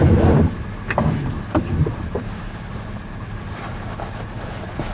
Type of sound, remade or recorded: recorded